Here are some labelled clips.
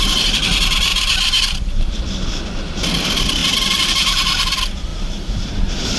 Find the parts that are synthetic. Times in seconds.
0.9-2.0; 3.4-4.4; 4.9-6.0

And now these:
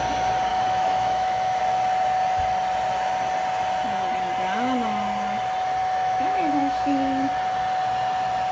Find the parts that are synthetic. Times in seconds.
0.5-1.6; 5.8-7.3

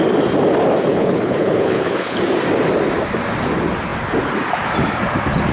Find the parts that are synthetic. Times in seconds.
0.9-2.2